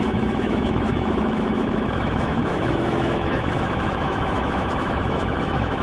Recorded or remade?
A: remade